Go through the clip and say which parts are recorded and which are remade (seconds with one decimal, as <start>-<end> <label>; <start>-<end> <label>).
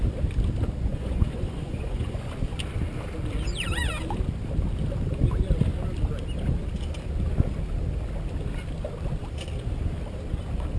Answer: 0.0-0.9 recorded; 0.9-2.3 remade; 2.3-10.8 recorded